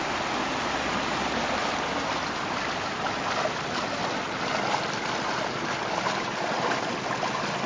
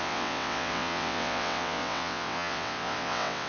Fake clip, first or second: second